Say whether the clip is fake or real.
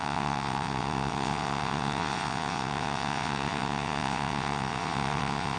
fake